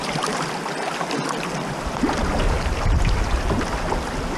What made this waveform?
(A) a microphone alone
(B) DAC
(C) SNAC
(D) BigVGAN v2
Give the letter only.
A